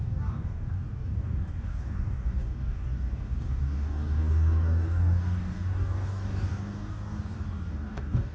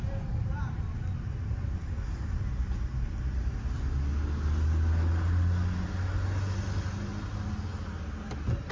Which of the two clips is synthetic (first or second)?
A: first